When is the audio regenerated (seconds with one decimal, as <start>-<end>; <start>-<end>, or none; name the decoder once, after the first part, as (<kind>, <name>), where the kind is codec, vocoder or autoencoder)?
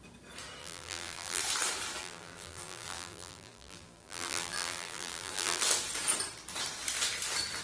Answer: 0.6-1.4 (vocoder, BigVGAN v2); 2.0-5.6